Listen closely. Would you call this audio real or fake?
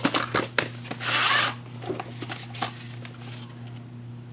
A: real